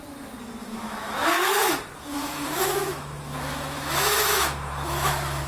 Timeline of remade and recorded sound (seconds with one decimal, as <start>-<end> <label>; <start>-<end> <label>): 0.0-0.6 recorded; 0.6-1.5 remade; 1.5-2.1 recorded; 2.1-5.5 remade